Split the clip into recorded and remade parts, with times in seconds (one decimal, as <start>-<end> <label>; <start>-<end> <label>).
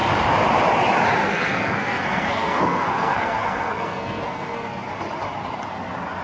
0.0-1.2 recorded; 1.2-4.9 remade; 4.9-6.2 recorded